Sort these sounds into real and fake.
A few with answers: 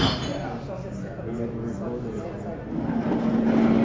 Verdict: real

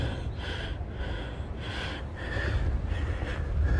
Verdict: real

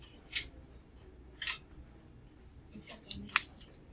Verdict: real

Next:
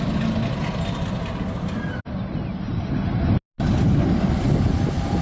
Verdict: real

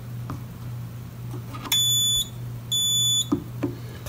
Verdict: real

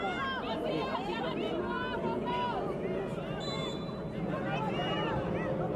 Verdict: real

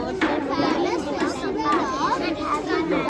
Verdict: fake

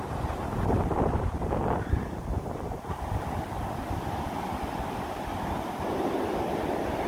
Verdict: real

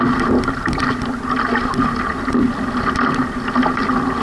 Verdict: real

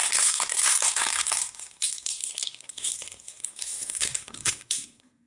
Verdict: fake